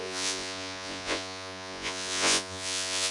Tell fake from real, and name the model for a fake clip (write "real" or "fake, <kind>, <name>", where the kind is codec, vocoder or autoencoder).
fake, vocoder, Vocos